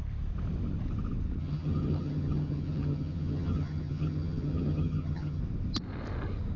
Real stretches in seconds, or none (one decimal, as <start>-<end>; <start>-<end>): 0.0-1.4; 5.4-6.6